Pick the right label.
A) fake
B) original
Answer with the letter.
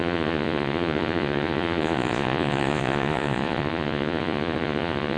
A